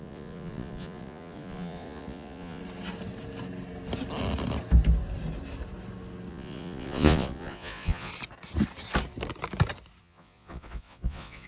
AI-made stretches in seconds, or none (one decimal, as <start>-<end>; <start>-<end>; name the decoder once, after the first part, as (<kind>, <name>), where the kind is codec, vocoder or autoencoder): 0.0-2.6 (vocoder, Vocos); 6.3-8.1; 10.0-11.5